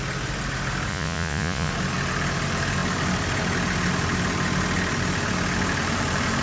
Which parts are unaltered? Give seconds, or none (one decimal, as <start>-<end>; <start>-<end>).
0.0-0.9; 1.7-6.4